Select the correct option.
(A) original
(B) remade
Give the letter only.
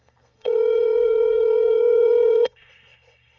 B